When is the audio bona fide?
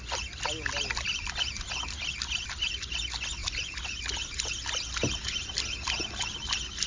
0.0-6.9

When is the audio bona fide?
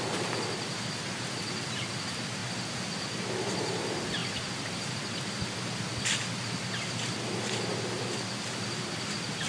0.0-9.5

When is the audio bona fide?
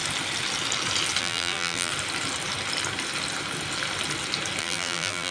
0.0-1.2; 1.9-4.6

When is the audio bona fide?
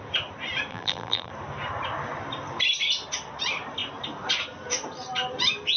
0.0-0.7; 1.3-5.8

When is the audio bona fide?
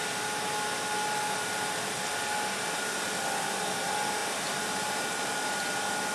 0.0-4.2; 5.5-6.1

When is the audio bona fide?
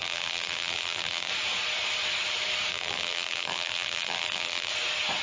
1.3-2.7; 4.7-5.2